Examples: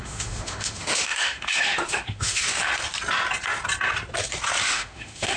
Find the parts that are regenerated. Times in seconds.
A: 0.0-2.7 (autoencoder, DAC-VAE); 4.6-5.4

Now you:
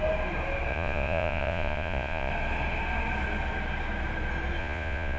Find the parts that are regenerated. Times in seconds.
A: 0.7-2.3 (vocoder, Vocos); 4.6-5.2

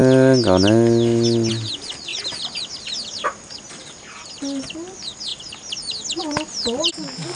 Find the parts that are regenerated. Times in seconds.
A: none

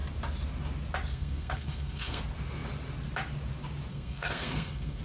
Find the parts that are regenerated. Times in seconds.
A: 1.1-2.2 (codec, SNAC); 3.9-5.0

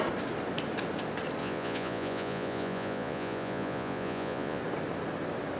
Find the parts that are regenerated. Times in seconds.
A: 1.4-4.6 (vocoder, Vocos)

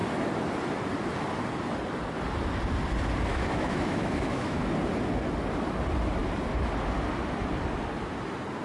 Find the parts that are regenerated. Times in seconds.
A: 3.3-4.6 (autoencoder, DAC-VAE)